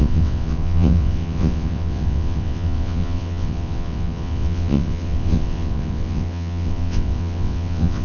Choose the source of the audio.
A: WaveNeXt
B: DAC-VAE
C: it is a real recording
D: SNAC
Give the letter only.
A